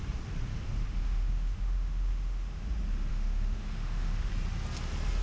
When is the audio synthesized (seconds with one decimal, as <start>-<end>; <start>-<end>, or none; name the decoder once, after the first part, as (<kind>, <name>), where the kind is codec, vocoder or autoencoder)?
0.5-2.7 (autoencoder, DAC-VAE); 3.1-4.3